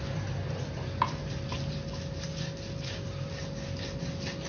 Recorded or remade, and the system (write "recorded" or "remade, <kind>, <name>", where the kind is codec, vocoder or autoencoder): recorded